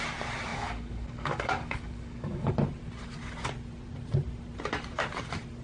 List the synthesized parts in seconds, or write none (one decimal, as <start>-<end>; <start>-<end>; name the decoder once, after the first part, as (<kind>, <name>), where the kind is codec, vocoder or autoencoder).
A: 0.5-2.5 (codec, DAC)